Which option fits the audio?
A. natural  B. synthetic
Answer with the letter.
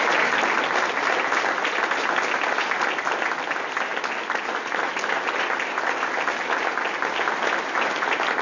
A